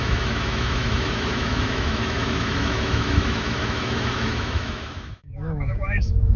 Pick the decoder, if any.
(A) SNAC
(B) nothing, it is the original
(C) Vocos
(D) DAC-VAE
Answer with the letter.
D